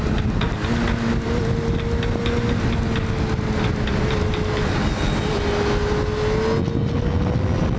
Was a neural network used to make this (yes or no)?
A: no